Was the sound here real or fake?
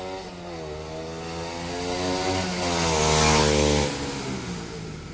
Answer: real